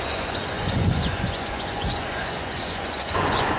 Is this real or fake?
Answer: fake